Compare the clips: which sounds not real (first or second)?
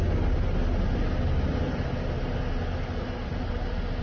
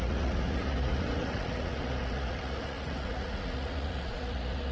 second